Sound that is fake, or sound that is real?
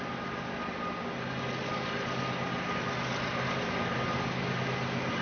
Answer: real